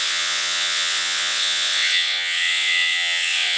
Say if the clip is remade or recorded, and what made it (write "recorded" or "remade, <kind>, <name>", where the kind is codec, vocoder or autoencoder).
remade, vocoder, WaveNeXt